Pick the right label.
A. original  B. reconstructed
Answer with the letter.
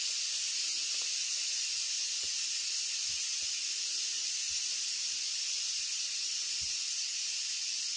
A